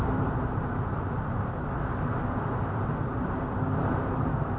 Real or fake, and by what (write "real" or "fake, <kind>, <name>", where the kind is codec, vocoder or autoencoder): real